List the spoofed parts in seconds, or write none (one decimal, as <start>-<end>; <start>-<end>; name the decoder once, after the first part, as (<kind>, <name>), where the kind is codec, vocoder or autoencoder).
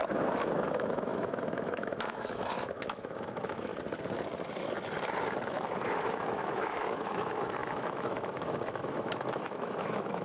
0.0-3.7 (autoencoder, DAC-VAE); 5.5-10.2